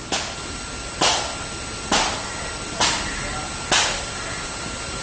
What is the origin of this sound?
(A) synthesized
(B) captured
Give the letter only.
B